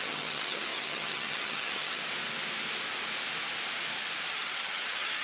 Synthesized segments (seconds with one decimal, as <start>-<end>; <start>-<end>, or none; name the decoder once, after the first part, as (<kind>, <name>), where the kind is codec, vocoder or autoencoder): 0.0-2.0 (vocoder, HiFi-GAN); 4.3-5.2

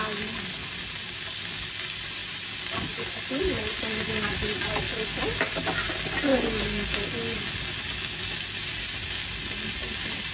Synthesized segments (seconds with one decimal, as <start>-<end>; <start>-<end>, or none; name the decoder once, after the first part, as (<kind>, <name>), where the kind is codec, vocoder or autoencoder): none

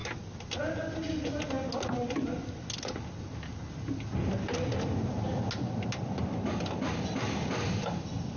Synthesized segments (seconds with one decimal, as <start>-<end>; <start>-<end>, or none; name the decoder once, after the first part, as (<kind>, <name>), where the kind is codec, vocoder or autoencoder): none

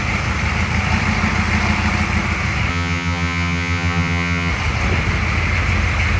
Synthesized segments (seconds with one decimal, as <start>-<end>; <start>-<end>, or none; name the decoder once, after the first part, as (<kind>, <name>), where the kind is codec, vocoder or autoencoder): 2.7-4.5 (vocoder, HiFi-GAN)

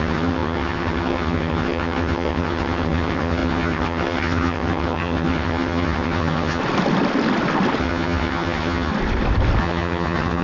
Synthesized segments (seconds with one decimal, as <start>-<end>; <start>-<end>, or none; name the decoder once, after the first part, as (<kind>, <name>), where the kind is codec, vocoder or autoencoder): 0.0-6.6 (vocoder, HiFi-GAN); 7.8-8.9; 9.6-10.4

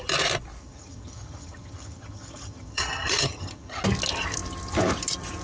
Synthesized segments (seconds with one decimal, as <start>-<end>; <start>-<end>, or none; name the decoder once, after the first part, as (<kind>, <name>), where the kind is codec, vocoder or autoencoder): 0.6-3.8 (vocoder, HiFi-GAN)

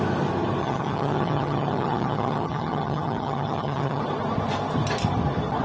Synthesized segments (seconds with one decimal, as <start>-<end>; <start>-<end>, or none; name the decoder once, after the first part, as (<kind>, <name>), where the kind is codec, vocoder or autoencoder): 0.6-4.0 (vocoder, HiFi-GAN)

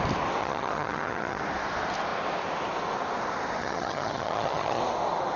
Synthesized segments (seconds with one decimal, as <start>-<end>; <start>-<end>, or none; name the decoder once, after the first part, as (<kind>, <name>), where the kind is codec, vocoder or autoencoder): 0.4-1.4 (vocoder, HiFi-GAN); 3.6-4.8